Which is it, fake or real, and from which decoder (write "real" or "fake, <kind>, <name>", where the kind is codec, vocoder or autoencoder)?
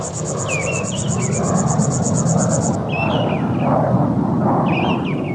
real